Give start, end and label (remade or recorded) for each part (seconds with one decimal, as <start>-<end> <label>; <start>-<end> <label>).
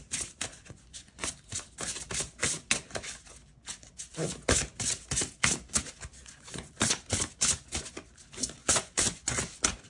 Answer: 0.0-0.5 recorded; 0.5-1.3 remade; 1.3-3.5 recorded; 3.5-4.1 remade; 4.1-6.2 recorded; 6.2-6.7 remade; 6.7-8.6 recorded; 8.6-9.4 remade; 9.4-9.9 recorded